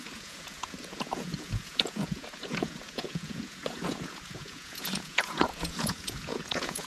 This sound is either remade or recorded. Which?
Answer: remade